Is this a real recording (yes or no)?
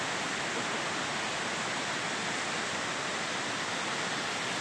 yes